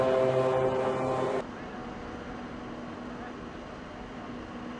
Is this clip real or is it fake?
real